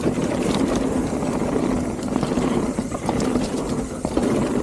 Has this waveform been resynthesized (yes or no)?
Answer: no